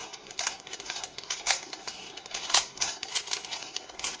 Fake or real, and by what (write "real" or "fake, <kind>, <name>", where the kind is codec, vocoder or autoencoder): fake, codec, SNAC